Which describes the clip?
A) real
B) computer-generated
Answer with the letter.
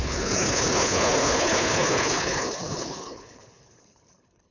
B